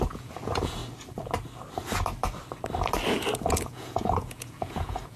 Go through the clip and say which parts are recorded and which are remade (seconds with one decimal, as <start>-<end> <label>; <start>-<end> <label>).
0.0-0.8 remade; 0.8-3.5 recorded; 3.5-5.2 remade